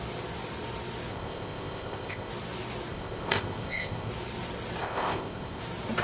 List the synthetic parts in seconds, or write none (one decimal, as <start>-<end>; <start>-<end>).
1.1-2.3; 2.9-4.1; 4.8-5.6